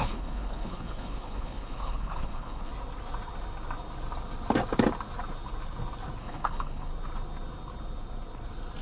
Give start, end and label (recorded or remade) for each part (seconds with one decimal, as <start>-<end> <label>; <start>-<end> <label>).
0.0-2.7 remade; 2.7-6.2 recorded; 6.2-6.9 remade; 6.9-8.8 recorded